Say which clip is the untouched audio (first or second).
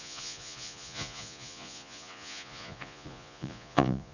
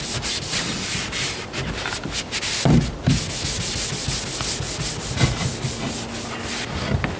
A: second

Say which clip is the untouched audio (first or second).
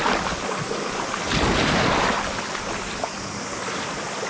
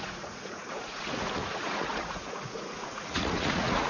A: first